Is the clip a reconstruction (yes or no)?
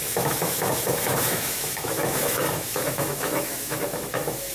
yes